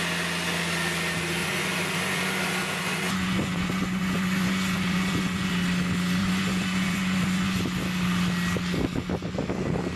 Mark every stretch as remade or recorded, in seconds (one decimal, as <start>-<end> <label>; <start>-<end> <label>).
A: 0.0-1.4 recorded; 1.4-5.5 remade; 5.5-6.2 recorded; 6.2-7.6 remade; 7.6-10.0 recorded

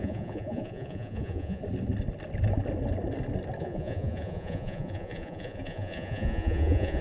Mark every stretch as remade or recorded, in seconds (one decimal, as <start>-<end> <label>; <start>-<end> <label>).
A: 0.0-1.6 remade; 1.6-3.6 recorded; 3.6-7.0 remade

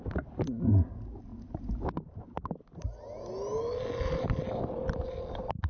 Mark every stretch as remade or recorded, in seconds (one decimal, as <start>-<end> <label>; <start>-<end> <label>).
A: 0.0-5.7 recorded

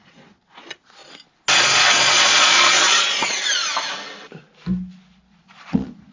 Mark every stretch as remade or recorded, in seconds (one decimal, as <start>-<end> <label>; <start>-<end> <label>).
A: 0.0-1.0 remade; 1.0-1.6 recorded; 1.6-3.6 remade; 3.6-5.4 recorded; 5.4-6.1 remade

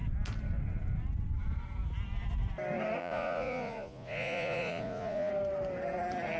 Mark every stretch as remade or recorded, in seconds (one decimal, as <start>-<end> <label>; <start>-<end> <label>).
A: 0.0-3.0 recorded; 3.0-5.3 remade; 5.3-6.4 recorded